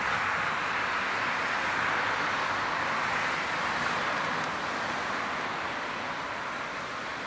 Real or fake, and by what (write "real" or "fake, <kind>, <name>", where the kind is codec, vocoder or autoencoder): real